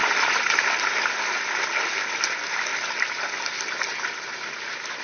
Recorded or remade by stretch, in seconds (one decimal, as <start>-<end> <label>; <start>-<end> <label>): 0.0-5.0 recorded